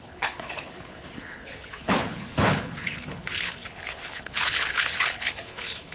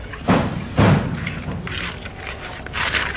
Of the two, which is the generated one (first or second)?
first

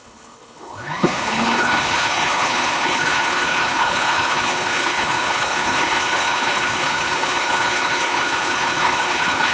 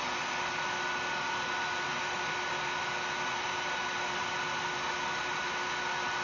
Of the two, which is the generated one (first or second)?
first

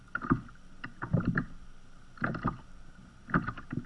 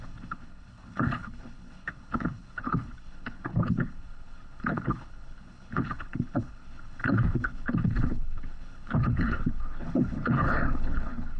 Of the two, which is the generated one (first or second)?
second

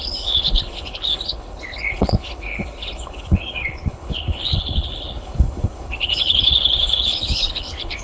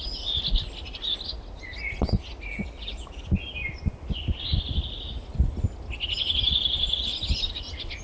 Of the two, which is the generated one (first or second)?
first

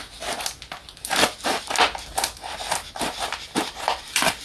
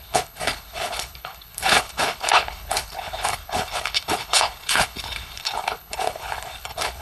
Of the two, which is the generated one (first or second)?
second